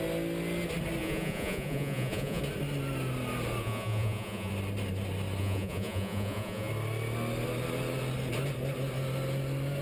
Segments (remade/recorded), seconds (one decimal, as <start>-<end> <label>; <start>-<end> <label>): 0.0-1.0 recorded; 1.0-2.4 remade; 2.4-3.6 recorded; 3.6-4.5 remade; 4.5-5.4 recorded; 5.4-6.7 remade; 6.7-9.8 recorded